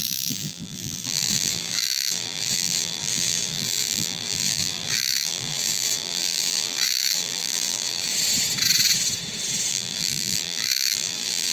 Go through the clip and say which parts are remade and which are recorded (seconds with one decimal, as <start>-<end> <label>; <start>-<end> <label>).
0.0-8.1 remade; 8.1-9.7 recorded; 9.7-11.5 remade